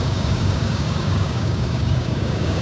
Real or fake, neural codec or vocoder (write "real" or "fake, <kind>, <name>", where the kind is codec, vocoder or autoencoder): fake, codec, DAC